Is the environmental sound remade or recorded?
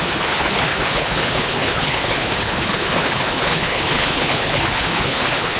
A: remade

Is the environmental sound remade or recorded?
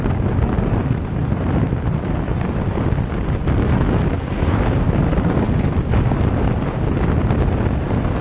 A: recorded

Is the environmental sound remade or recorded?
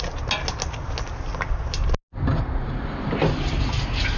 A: recorded